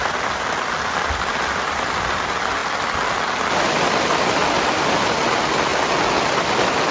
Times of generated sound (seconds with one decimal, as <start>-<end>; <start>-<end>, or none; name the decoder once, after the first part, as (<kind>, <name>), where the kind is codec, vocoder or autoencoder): none